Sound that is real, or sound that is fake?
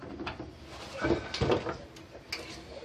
real